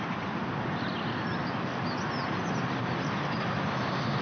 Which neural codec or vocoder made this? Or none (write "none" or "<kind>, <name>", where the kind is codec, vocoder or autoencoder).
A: none